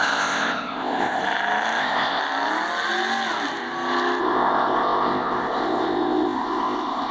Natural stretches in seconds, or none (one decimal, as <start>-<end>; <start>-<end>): 1.2-1.8; 2.2-4.2